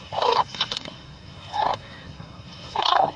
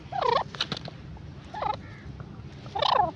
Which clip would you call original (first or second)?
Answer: second